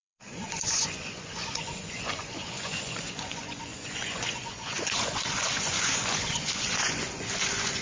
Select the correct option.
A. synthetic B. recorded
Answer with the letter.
A